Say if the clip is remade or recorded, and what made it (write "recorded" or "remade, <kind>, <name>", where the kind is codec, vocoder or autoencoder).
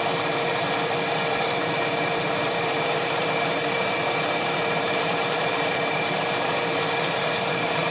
remade, vocoder, BigVGAN v2